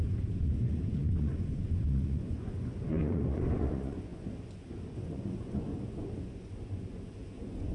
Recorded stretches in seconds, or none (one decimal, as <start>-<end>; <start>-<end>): none